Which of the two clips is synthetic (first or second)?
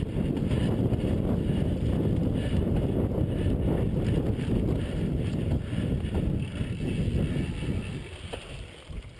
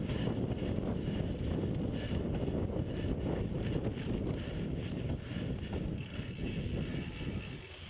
first